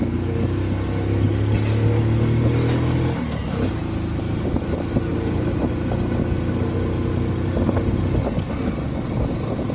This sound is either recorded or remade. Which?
recorded